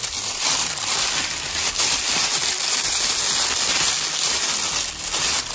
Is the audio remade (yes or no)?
no